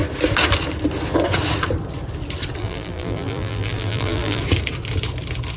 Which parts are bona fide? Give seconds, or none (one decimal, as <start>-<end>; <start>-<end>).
0.0-2.6; 4.4-5.6